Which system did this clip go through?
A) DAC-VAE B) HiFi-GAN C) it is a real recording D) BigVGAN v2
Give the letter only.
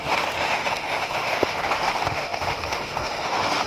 A